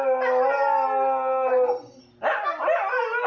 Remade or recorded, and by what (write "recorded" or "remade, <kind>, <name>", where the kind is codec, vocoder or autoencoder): recorded